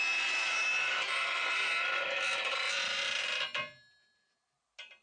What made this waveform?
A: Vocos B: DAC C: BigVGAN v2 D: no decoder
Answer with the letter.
D